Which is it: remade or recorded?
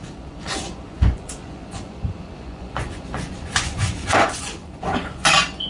remade